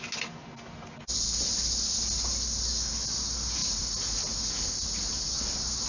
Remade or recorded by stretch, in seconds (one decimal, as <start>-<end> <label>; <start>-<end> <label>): 0.0-3.6 recorded; 3.6-5.1 remade; 5.1-5.9 recorded